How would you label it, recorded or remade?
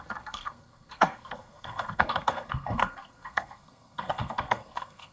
remade